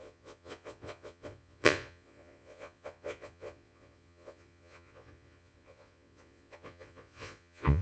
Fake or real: fake